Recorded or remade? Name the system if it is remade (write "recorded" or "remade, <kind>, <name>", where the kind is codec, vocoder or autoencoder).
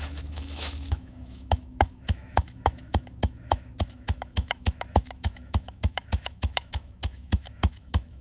remade, autoencoder, DAC-VAE